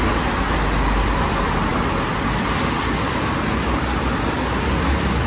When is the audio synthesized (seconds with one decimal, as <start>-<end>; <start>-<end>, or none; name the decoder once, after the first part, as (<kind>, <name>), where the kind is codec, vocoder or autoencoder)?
none